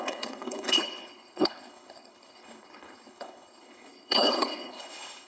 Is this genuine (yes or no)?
no